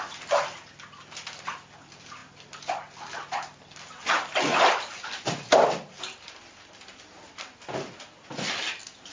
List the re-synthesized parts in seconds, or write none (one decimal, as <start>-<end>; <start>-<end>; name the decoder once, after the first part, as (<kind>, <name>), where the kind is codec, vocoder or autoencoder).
none